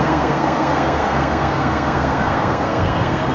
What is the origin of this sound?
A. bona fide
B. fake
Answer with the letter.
B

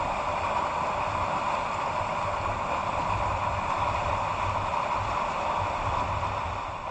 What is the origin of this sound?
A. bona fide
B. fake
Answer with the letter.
A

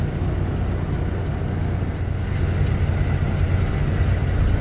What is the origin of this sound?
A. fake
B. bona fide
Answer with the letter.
B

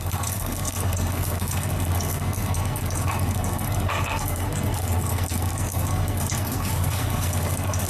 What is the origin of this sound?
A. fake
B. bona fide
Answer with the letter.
A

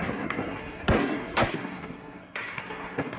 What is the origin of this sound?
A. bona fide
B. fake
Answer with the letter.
B